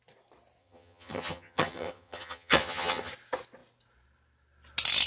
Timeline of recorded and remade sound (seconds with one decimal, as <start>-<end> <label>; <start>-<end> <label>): 0.0-0.6 recorded; 0.6-3.1 remade; 3.1-5.1 recorded